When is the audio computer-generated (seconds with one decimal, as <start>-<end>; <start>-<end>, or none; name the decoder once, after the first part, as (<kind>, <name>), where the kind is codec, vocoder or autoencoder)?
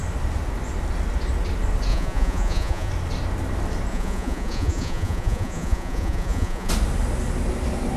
1.9-2.9 (vocoder, Vocos); 3.9-6.7